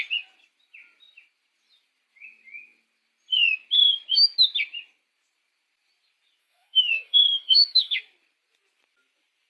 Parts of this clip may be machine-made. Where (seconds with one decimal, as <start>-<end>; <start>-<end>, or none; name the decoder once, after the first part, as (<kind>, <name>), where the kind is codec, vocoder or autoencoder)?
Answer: 6.4-8.0 (autoencoder, DAC-VAE)